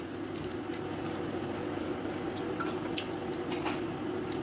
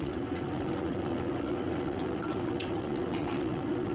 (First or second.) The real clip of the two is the first